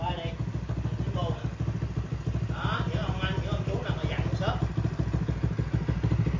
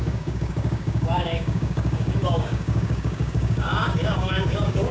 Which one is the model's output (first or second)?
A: second